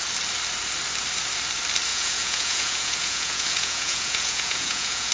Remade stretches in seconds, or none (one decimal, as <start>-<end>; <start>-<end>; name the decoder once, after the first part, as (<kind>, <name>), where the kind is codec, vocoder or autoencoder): 1.9-5.1 (vocoder, Vocos)